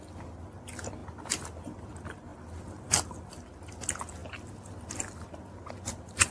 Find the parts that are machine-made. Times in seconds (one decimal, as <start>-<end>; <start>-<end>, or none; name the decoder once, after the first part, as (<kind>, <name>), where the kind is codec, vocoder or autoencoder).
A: 1.0-1.9 (vocoder, BigVGAN v2); 2.3-2.9